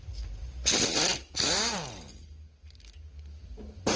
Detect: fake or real real